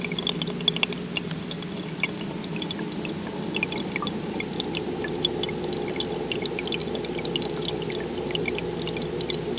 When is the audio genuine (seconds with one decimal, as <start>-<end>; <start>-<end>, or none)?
0.0-9.6